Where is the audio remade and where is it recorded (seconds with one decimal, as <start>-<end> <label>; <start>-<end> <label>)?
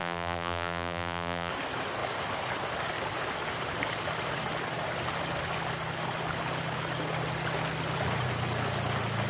0.0-1.5 remade; 1.5-9.3 recorded